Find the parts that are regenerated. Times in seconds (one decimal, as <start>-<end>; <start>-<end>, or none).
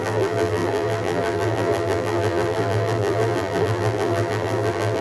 0.0-5.0